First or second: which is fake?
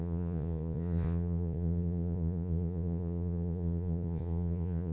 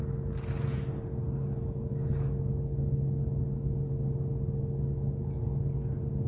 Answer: first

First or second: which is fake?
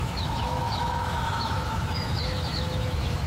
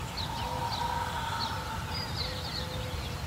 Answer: first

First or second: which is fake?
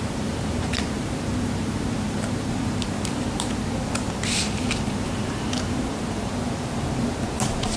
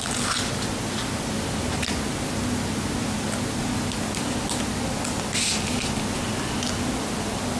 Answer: first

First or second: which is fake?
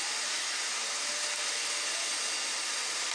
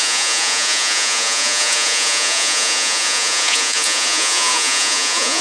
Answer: second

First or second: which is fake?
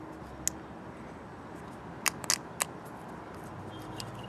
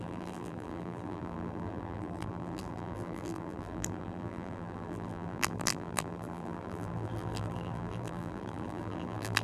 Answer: second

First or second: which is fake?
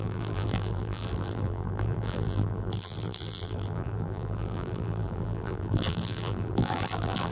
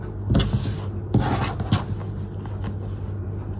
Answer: first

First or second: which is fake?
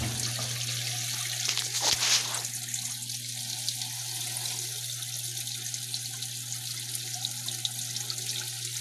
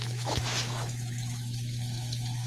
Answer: second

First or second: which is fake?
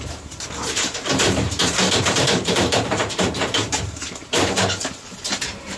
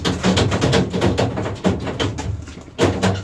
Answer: first